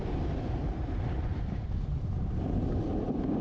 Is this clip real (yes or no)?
yes